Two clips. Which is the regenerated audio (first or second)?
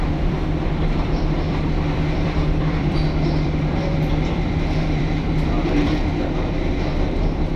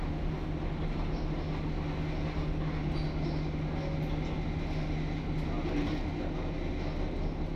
first